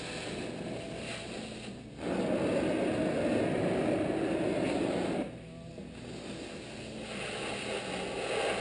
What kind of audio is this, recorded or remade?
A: recorded